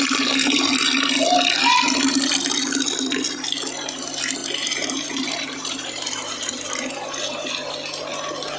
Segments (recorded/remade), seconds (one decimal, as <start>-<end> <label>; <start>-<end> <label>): 0.0-4.4 recorded; 4.4-7.7 remade; 7.7-8.6 recorded